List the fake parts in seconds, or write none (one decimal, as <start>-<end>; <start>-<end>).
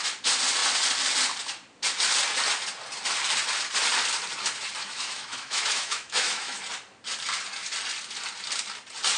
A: 4.8-6.6